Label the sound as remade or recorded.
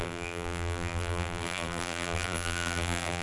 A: remade